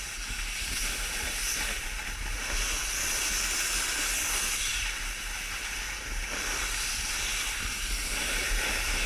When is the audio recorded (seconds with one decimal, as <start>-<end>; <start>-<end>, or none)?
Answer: 0.0-9.1